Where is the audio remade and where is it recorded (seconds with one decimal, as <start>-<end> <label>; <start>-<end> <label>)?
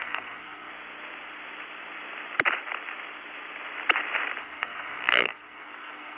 0.0-0.7 remade; 0.7-4.4 recorded; 4.4-6.2 remade